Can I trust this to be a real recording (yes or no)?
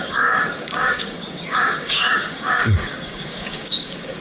no